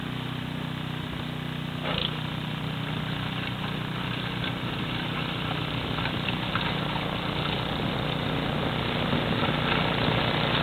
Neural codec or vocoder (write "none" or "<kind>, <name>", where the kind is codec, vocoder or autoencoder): none